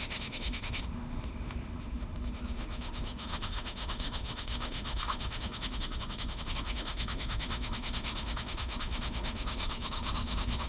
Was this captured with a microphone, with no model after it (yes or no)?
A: no